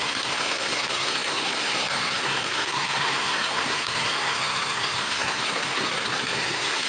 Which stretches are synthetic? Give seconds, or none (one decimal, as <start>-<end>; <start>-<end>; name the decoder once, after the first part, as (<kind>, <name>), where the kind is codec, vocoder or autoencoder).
0.0-6.9 (codec, SNAC)